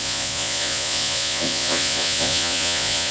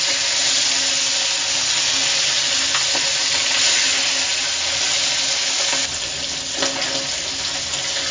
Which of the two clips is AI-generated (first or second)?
first